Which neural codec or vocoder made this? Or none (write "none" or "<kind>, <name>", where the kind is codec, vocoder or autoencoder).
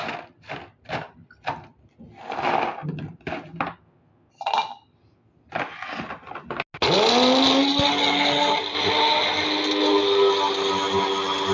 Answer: none